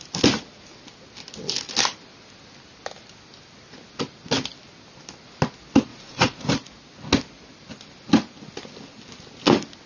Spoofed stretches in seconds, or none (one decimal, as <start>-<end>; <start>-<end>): 5.9-6.5